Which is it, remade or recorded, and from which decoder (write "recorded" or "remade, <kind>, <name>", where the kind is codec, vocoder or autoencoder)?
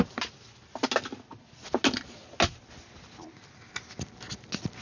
recorded